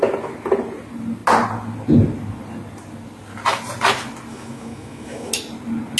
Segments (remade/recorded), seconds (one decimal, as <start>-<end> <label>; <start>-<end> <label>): 0.0-4.3 recorded; 4.3-5.3 remade; 5.3-6.0 recorded